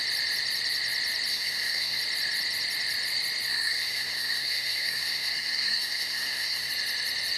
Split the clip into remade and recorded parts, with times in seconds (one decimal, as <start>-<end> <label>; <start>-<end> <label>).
0.0-1.3 recorded; 1.3-2.0 remade; 2.0-3.5 recorded; 3.5-6.7 remade; 6.7-7.4 recorded